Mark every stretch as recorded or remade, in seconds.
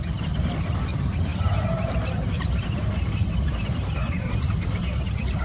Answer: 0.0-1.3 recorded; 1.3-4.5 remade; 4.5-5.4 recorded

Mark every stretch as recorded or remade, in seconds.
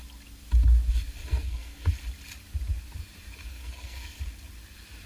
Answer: 0.0-1.2 recorded; 1.2-1.9 remade; 1.9-3.5 recorded; 3.5-4.2 remade; 4.2-5.1 recorded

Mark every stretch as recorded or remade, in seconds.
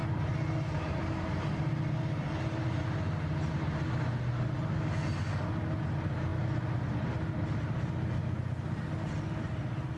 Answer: 0.0-10.0 recorded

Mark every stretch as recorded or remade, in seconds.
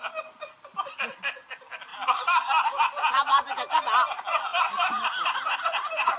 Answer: 0.0-6.2 recorded